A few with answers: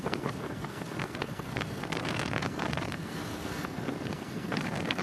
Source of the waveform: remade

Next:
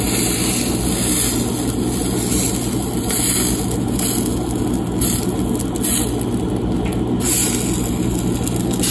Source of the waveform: recorded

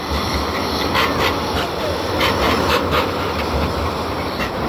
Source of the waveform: recorded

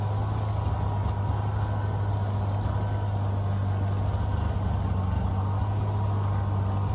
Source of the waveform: recorded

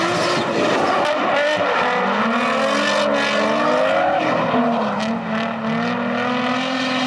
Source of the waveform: recorded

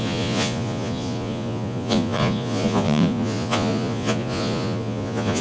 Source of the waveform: remade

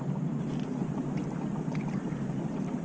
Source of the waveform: recorded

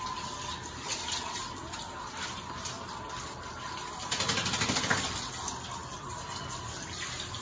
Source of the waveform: recorded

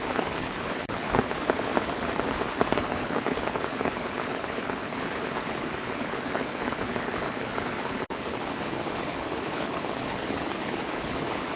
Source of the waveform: remade